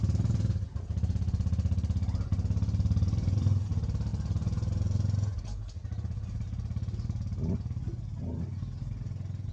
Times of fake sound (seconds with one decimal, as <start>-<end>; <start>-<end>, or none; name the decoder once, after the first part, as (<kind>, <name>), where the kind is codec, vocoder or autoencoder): none